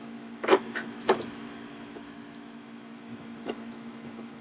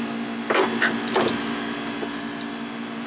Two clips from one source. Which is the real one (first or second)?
second